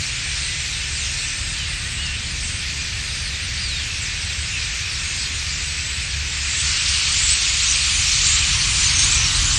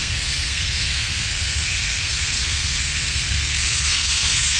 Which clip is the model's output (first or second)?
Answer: second